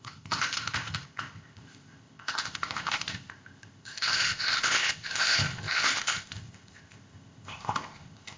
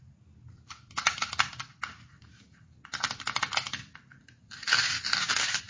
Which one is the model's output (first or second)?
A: first